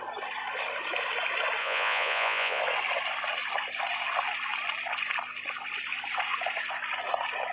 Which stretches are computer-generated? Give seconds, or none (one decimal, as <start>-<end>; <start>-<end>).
1.6-2.6